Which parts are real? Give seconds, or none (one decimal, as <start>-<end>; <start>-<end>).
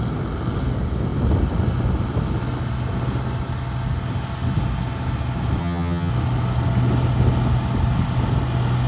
0.0-5.6; 6.1-8.9